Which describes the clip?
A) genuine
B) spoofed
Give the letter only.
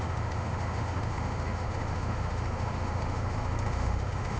B